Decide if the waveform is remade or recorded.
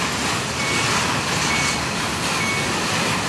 recorded